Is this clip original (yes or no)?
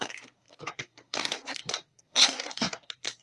no